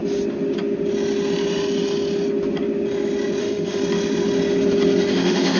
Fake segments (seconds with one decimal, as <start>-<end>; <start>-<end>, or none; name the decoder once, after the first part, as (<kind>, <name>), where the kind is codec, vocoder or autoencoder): 3.4-3.8 (autoencoder, DAC-VAE); 5.1-5.6